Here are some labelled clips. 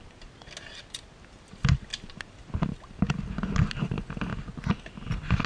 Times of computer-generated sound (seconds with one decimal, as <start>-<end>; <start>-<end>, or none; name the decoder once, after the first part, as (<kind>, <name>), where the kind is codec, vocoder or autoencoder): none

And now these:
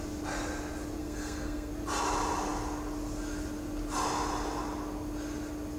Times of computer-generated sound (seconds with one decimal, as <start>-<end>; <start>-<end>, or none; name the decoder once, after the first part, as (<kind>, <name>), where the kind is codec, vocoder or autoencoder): 1.0-1.7 (codec, SNAC)

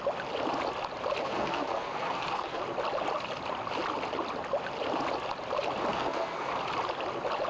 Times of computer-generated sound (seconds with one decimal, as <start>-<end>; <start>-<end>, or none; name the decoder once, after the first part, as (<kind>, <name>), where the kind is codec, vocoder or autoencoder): 1.2-2.6 (codec, SNAC); 5.9-6.5

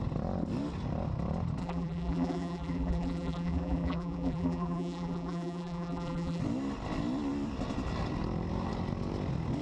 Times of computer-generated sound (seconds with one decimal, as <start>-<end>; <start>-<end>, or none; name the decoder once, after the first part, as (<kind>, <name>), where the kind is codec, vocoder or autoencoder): 1.6-6.4 (vocoder, BigVGAN v2)

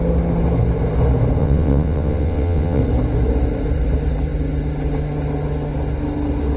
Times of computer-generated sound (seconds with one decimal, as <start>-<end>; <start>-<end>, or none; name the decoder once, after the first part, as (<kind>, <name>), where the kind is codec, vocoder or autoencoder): 1.4-2.8 (vocoder, WaveNeXt)

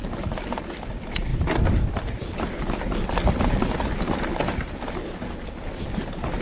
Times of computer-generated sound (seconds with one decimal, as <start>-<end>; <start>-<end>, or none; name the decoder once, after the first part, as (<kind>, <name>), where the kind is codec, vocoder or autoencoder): none